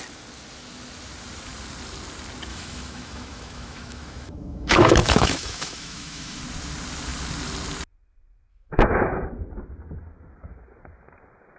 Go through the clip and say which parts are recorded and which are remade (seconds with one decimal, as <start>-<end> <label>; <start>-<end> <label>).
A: 0.0-2.5 recorded; 2.5-6.4 remade; 6.4-8.5 recorded; 8.5-9.2 remade; 9.2-11.6 recorded